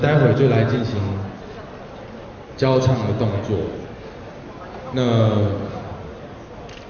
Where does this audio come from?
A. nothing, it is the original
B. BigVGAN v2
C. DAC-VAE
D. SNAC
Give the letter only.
A